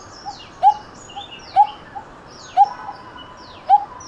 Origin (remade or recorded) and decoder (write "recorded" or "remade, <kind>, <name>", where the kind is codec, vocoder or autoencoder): recorded